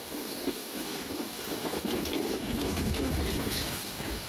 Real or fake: fake